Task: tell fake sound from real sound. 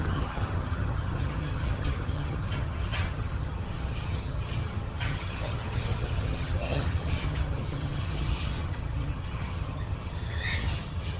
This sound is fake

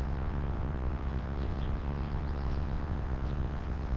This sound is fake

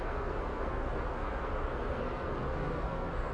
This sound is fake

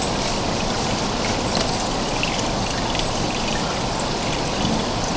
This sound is real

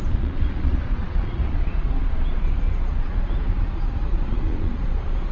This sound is fake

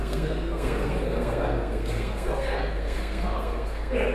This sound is fake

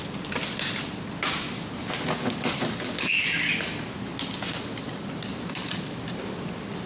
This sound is real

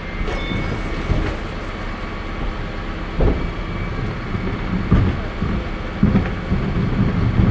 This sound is real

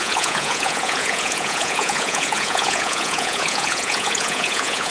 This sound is fake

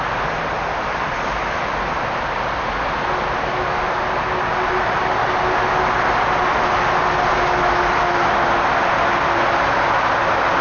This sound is real